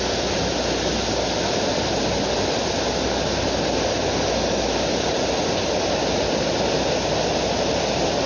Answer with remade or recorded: recorded